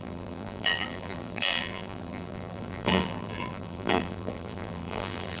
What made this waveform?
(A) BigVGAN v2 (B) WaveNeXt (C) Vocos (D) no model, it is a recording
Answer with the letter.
A